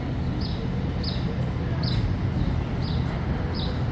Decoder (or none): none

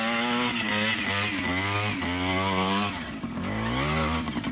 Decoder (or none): none